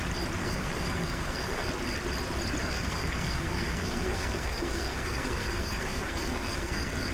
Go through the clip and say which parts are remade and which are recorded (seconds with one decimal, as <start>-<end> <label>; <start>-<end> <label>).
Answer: 0.0-0.4 recorded; 0.4-1.7 remade; 1.7-2.6 recorded; 2.6-7.1 remade